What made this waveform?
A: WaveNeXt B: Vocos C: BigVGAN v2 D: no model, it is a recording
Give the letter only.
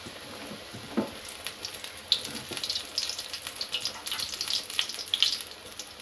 D